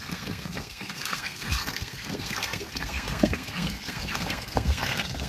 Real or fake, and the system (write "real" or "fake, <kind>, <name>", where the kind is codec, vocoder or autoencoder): fake, codec, SNAC